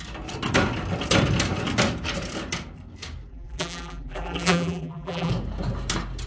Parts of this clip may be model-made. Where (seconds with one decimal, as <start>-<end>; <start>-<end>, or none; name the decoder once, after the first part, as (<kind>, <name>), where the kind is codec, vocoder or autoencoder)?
3.3-5.3 (vocoder, BigVGAN v2)